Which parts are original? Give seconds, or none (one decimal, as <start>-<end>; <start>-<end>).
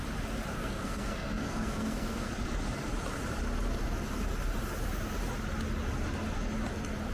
0.0-0.5; 2.3-7.1